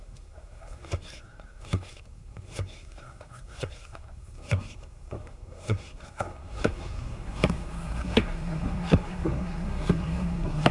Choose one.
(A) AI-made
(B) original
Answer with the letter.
A